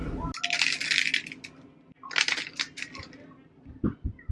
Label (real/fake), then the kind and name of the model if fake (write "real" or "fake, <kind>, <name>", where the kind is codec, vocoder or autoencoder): real